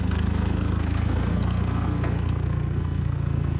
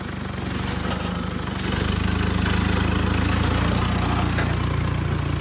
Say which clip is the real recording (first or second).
second